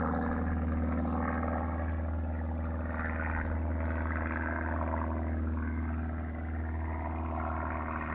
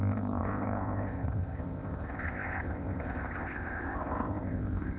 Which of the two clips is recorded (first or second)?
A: first